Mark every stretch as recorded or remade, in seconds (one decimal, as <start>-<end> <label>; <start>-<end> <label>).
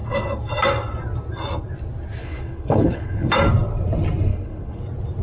0.0-2.2 recorded; 2.2-3.3 remade; 3.3-4.3 recorded; 4.3-4.8 remade; 4.8-5.2 recorded